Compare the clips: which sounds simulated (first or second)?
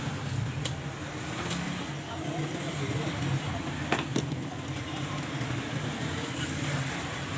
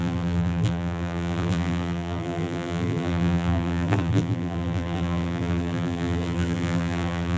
second